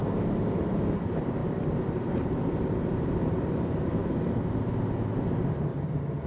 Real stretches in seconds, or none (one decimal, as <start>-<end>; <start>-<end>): 4.0-5.2